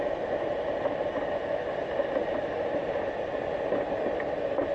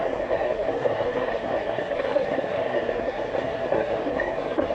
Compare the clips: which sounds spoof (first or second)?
second